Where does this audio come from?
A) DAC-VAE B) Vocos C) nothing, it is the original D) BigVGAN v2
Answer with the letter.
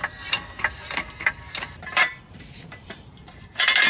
D